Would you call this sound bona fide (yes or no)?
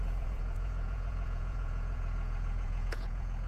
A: no